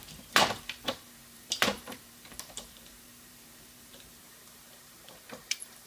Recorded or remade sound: remade